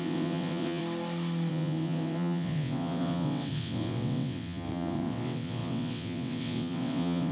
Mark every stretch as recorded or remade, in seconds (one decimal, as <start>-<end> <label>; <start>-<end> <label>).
0.0-0.8 remade; 0.8-1.5 recorded; 1.5-7.3 remade